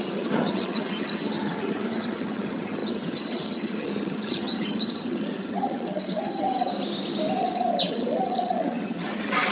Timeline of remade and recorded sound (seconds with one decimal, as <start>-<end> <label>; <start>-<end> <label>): 0.0-6.7 remade; 6.7-7.4 recorded; 7.4-9.5 remade